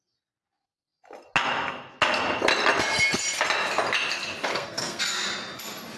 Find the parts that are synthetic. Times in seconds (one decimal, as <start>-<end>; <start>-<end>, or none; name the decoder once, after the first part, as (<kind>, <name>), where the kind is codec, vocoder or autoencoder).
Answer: 4.5-5.0 (codec, SNAC)